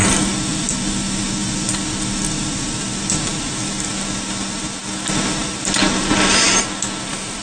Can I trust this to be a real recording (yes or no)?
yes